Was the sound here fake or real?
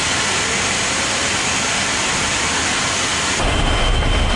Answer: real